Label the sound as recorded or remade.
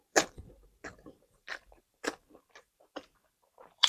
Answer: remade